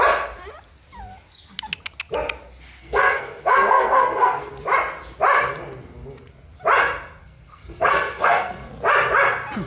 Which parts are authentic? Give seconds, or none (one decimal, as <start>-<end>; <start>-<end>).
0.0-2.8; 4.5-7.2; 8.7-9.7